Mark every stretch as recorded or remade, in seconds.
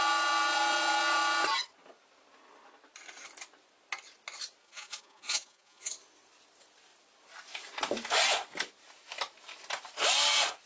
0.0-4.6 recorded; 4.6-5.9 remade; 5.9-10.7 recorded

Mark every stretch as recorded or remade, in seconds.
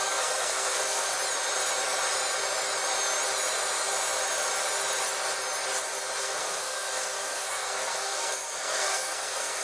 0.0-1.1 remade; 1.1-6.2 recorded; 6.2-9.6 remade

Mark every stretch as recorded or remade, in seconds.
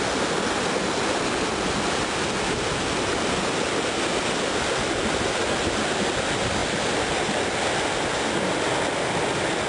0.0-9.7 recorded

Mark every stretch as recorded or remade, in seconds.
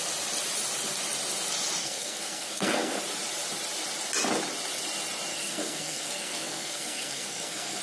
0.0-1.8 recorded; 1.8-3.0 remade; 3.0-5.3 recorded; 5.3-7.8 remade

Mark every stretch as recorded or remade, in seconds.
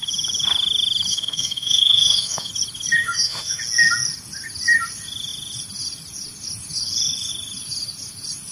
0.0-1.1 recorded; 1.1-2.5 remade; 2.5-3.0 recorded; 3.0-3.6 remade; 3.6-8.5 recorded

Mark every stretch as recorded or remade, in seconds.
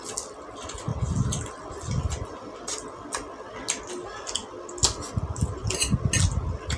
0.0-6.8 recorded